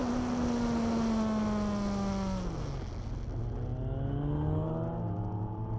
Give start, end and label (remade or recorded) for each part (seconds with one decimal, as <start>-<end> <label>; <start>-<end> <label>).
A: 0.0-5.8 recorded